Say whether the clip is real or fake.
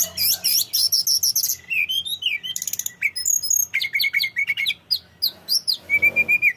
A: real